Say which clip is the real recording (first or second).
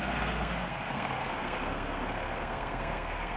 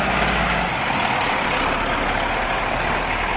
second